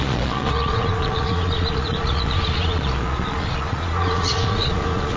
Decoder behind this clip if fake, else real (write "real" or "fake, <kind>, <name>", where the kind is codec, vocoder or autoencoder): fake, vocoder, Vocos